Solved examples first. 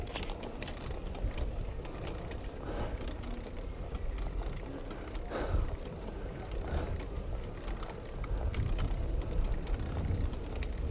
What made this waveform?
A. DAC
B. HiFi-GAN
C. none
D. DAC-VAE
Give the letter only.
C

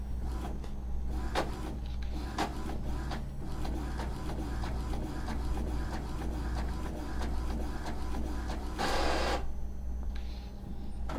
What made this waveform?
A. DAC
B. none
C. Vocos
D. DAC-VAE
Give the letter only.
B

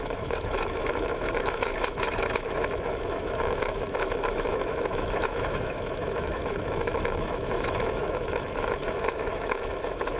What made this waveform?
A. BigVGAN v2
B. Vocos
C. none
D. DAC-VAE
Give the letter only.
D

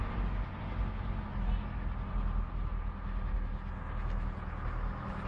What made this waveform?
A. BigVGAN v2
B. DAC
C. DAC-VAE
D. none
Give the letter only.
D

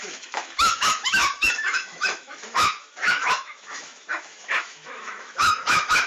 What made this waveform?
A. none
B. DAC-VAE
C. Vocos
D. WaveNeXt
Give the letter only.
B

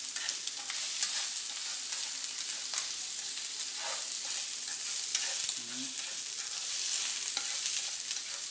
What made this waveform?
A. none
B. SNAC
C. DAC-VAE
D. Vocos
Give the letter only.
A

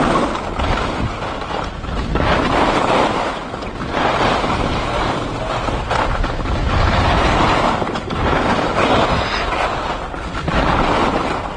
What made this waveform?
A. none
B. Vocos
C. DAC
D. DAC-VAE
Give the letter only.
A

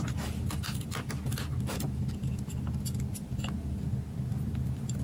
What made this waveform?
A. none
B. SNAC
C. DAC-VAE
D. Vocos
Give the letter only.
A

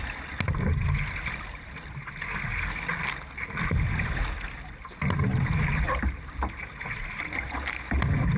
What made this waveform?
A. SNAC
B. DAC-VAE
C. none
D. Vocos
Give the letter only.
C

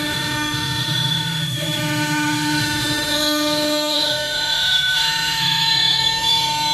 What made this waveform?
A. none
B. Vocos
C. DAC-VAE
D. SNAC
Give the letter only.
C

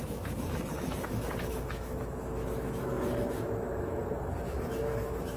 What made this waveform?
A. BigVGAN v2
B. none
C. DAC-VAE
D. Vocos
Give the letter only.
C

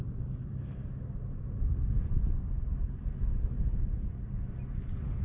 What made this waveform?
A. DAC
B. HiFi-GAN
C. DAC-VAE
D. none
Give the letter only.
D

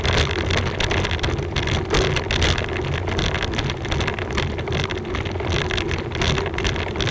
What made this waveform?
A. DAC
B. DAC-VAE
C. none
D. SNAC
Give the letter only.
C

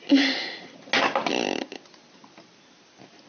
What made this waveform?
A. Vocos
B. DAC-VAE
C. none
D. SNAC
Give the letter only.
C